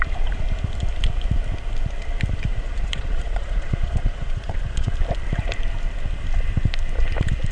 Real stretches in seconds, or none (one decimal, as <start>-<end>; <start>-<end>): 0.0-2.5; 4.9-7.5